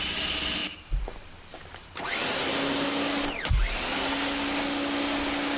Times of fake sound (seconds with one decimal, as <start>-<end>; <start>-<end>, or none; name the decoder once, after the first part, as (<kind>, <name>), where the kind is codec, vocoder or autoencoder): none